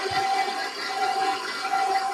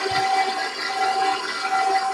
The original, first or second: second